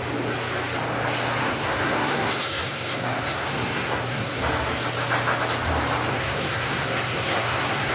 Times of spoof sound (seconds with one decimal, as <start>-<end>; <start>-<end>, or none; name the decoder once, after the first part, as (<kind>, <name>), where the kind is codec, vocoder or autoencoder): 1.4-4.4 (codec, SNAC); 6.1-7.9